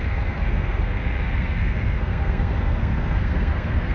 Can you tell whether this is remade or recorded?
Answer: remade